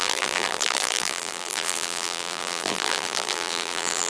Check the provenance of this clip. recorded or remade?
remade